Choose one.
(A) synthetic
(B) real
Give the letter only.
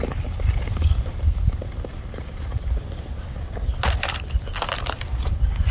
B